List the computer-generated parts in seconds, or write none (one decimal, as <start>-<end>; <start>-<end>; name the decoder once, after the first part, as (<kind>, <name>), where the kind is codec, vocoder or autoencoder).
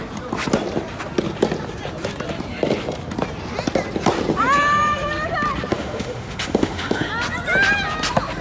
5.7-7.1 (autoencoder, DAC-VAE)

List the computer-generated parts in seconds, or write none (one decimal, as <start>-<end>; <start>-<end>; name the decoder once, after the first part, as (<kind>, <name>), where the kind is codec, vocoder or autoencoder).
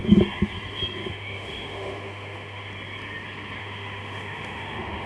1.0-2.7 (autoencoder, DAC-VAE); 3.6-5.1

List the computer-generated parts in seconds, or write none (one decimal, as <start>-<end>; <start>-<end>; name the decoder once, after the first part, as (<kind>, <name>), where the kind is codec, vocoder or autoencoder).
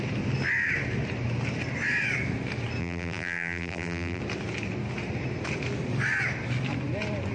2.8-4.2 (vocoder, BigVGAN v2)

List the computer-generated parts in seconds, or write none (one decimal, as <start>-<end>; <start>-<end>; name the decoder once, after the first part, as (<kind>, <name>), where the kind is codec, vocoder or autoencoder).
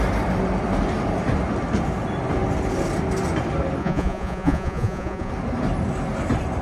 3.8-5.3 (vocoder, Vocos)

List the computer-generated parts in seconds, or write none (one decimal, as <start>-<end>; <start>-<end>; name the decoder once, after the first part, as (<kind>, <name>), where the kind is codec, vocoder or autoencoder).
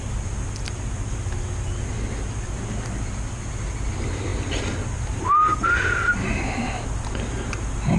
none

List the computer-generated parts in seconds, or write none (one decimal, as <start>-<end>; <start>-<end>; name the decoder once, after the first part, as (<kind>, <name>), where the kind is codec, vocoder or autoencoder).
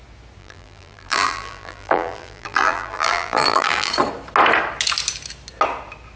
0.4-3.9 (vocoder, BigVGAN v2)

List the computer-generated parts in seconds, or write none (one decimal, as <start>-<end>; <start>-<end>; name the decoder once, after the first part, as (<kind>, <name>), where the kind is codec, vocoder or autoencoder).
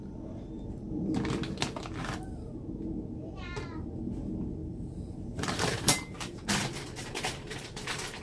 4.6-8.2 (vocoder, BigVGAN v2)